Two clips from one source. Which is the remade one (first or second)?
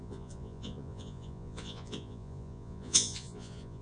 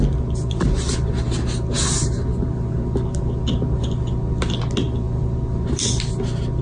first